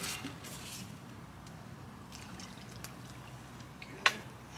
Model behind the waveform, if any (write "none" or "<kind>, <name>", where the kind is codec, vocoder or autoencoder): none